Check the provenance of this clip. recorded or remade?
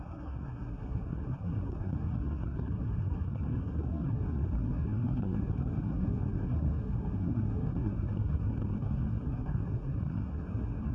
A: remade